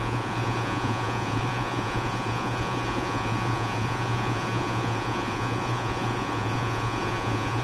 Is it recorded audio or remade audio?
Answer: remade